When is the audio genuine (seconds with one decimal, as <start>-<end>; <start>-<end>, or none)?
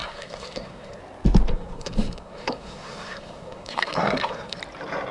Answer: 1.0-1.5; 4.6-5.1